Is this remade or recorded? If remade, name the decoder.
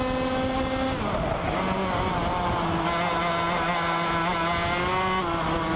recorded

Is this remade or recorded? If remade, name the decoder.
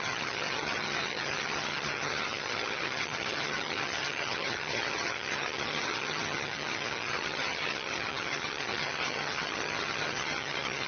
remade, vocoder, HiFi-GAN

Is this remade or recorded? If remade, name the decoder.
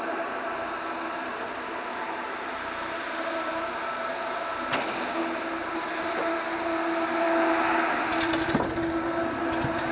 recorded